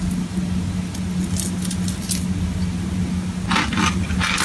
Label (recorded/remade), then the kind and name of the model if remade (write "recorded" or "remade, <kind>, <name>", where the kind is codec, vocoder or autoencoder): recorded